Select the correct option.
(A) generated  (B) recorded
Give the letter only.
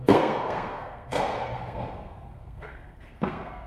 A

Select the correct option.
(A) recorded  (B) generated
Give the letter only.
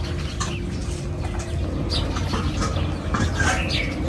A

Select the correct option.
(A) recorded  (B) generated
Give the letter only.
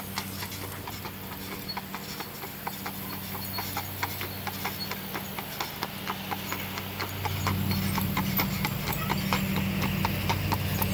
A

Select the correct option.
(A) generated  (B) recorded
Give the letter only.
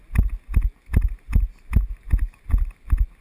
B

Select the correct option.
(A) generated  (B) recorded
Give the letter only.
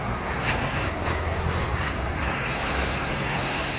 A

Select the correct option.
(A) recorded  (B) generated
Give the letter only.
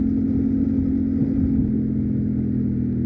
A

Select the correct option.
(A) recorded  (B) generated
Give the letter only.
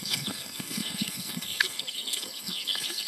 B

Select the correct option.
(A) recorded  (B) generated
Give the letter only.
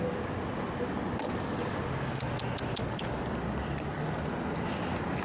A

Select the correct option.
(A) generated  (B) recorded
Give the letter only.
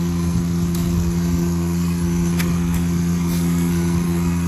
A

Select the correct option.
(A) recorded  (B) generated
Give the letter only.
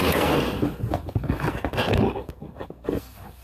B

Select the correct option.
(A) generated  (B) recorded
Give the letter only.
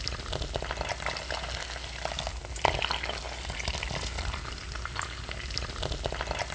B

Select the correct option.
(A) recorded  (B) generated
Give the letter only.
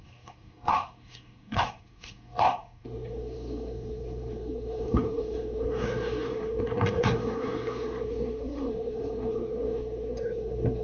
B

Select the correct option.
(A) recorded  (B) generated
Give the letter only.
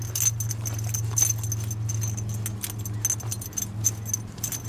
A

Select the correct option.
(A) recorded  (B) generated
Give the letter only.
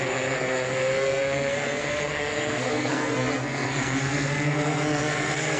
B